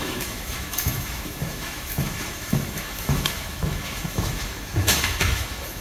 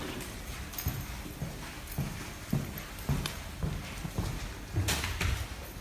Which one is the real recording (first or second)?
second